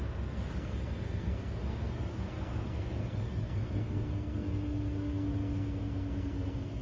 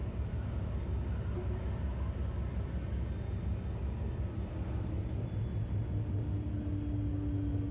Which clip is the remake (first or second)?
first